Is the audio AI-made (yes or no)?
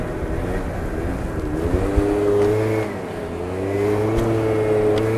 no